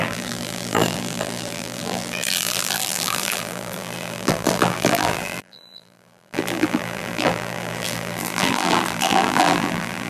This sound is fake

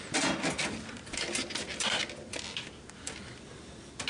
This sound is real